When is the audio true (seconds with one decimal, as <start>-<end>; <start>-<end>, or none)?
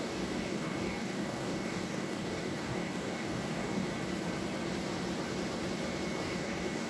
3.9-6.2